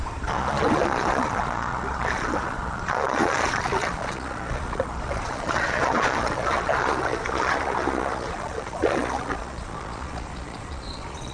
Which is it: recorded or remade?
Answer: remade